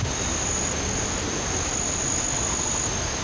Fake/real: real